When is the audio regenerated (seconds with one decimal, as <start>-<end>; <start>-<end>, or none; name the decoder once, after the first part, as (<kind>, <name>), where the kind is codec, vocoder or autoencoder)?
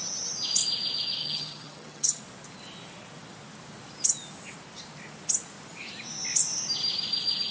1.2-2.2 (vocoder, HiFi-GAN)